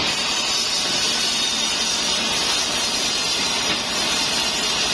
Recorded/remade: recorded